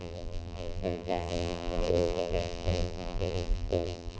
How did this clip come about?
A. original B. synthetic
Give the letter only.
B